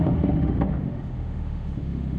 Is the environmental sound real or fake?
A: fake